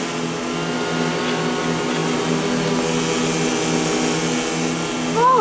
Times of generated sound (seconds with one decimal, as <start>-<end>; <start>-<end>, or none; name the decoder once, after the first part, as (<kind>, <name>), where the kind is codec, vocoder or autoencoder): none